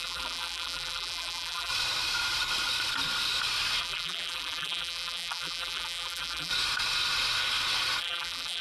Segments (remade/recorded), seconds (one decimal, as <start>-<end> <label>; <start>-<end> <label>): 0.0-1.7 remade; 1.7-3.8 recorded; 3.8-6.5 remade; 6.5-8.0 recorded; 8.0-8.6 remade